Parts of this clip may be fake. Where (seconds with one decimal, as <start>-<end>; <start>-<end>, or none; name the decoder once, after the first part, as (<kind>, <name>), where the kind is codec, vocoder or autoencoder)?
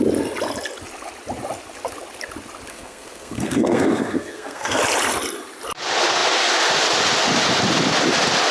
2.7-4.8 (codec, SNAC)